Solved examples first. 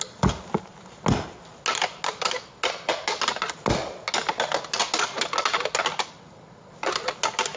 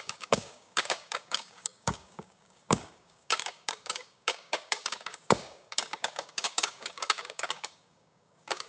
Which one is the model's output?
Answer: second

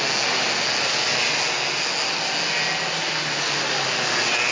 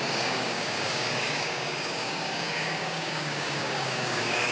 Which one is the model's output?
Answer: second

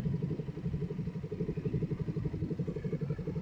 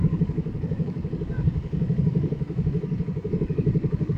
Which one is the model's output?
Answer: second